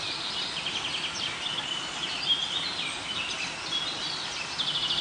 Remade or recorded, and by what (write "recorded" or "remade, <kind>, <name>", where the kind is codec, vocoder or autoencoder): recorded